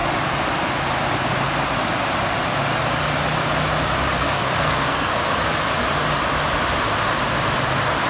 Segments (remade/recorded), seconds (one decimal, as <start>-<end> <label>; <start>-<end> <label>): 0.0-4.2 recorded; 4.2-5.2 remade; 5.2-8.1 recorded